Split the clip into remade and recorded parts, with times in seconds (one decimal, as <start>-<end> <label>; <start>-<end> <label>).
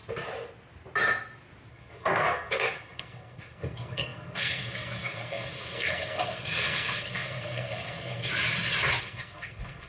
0.0-1.7 recorded; 1.7-8.3 remade; 8.3-9.0 recorded; 9.0-9.9 remade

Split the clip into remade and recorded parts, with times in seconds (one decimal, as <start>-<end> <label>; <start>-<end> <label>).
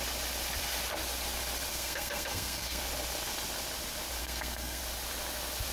0.0-1.7 recorded; 1.7-2.8 remade; 2.8-4.2 recorded; 4.2-4.8 remade; 4.8-5.7 recorded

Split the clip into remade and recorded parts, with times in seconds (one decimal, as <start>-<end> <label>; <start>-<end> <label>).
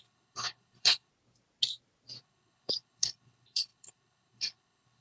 0.0-1.1 remade; 1.1-2.2 recorded; 2.2-5.0 remade